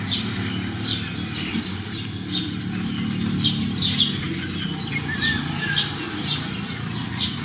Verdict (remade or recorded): recorded